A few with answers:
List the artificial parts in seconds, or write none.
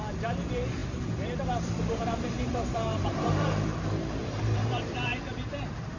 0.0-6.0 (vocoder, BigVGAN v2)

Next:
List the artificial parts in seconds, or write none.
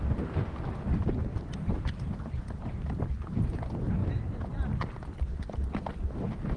1.3-2.3 (vocoder, BigVGAN v2)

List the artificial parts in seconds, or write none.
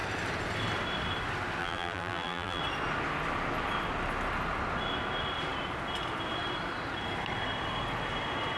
1.6-2.6 (vocoder, BigVGAN v2)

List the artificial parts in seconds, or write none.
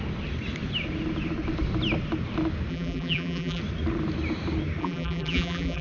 2.7-3.6 (vocoder, BigVGAN v2); 4.8-5.8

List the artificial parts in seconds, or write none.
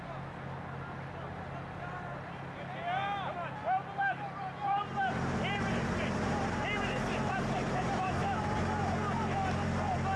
4.9-8.6 (vocoder, BigVGAN v2)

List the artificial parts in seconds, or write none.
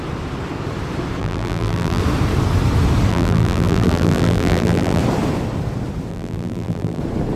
1.2-2.0 (vocoder, BigVGAN v2); 3.1-5.0; 6.1-7.0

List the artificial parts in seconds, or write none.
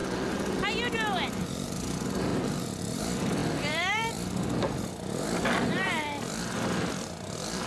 1.3-2.3 (vocoder, BigVGAN v2); 2.8-7.7